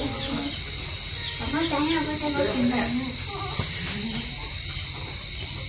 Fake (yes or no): no